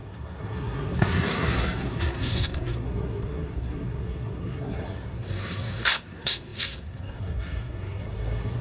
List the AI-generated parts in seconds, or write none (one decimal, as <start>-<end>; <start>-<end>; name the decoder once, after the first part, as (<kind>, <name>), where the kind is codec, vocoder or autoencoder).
0.0-8.6 (codec, SNAC)